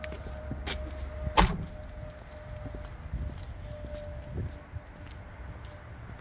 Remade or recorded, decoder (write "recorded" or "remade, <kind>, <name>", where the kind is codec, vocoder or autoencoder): recorded